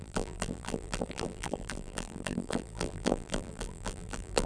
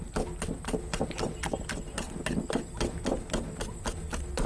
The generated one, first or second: first